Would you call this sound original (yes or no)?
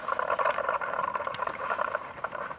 no